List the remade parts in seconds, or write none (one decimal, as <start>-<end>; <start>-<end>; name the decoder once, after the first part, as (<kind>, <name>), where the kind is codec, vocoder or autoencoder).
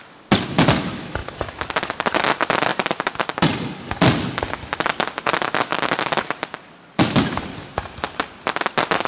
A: 1.2-1.9 (vocoder, BigVGAN v2); 5.7-7.7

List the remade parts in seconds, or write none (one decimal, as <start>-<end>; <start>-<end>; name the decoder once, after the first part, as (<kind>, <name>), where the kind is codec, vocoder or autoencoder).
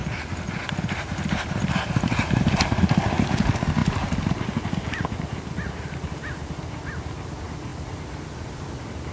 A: 7.7-9.1 (vocoder, BigVGAN v2)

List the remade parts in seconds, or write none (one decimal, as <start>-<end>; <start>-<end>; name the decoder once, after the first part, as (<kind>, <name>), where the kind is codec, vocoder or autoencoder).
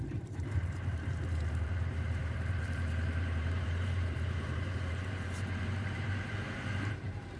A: 0.0-7.4 (vocoder, BigVGAN v2)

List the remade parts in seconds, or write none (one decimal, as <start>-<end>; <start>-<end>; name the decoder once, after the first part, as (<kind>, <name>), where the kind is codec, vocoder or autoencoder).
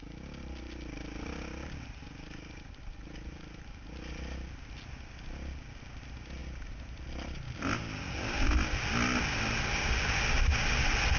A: none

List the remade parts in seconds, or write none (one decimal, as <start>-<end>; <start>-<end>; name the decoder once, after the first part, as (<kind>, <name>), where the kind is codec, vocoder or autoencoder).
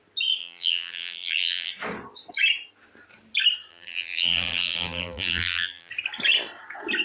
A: 0.4-1.7 (vocoder, BigVGAN v2); 3.7-5.9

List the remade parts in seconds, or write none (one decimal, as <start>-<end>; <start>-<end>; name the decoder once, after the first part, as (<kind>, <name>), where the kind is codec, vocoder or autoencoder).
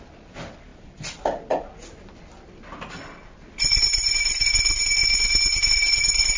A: none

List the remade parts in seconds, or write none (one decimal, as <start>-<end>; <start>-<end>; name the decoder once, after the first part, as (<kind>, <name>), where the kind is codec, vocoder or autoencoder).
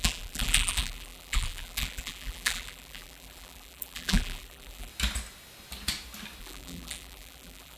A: 0.0-4.9 (vocoder, BigVGAN v2); 6.4-7.8